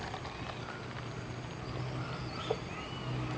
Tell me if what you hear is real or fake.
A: real